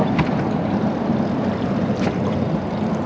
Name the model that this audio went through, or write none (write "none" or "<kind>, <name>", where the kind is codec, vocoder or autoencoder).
none